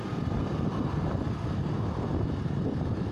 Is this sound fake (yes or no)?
no